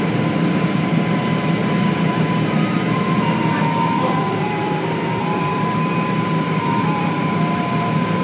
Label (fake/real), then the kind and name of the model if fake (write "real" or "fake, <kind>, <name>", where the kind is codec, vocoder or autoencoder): fake, vocoder, BigVGAN v2